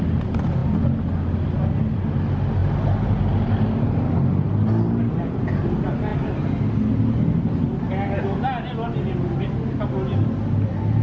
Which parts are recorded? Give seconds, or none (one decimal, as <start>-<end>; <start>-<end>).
0.0-11.0